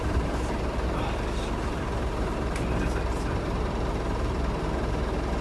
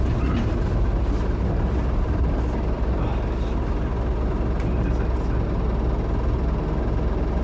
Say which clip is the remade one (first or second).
first